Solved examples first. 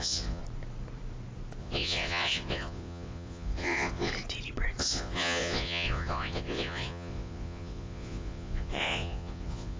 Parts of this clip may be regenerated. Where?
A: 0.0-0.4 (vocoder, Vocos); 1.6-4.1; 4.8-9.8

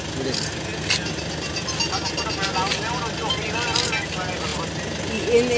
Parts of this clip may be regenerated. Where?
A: none

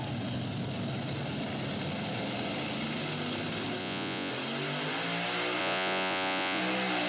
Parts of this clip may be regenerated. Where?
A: 3.8-4.3 (vocoder, Vocos); 5.6-6.6